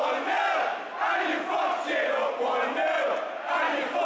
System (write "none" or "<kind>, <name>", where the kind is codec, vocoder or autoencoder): none